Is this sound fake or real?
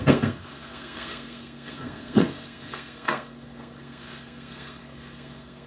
fake